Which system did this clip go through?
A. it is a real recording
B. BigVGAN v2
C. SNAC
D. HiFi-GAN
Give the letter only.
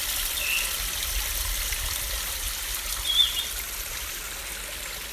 A